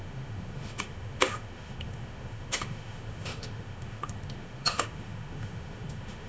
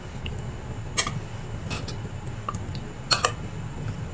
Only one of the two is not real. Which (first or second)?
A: first